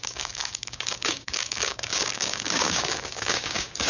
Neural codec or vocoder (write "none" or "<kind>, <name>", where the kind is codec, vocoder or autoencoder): codec, DAC